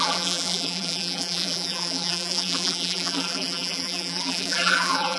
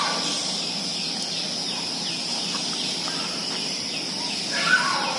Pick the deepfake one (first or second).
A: first